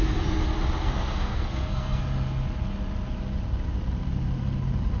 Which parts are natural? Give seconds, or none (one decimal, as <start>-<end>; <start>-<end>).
0.0-0.8; 2.0-5.0